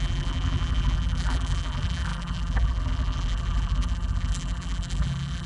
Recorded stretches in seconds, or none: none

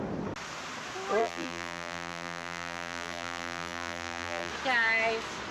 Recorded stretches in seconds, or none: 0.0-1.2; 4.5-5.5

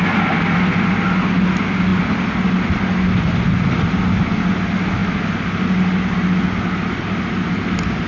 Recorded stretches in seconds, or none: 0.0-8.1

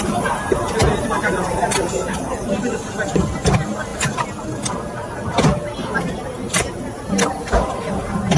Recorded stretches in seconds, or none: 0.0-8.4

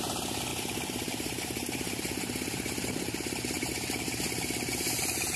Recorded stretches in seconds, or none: 0.0-0.5; 3.7-5.4